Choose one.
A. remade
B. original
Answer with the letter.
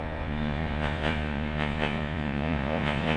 A